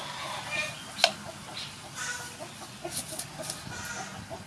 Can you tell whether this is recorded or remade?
recorded